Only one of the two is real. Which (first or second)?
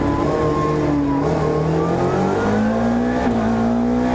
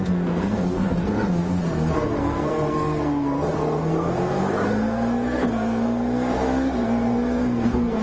first